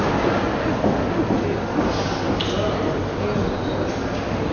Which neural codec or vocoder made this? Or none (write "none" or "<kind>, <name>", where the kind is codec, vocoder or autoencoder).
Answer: none